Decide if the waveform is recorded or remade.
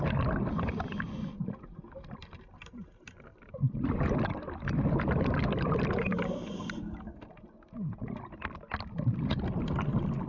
recorded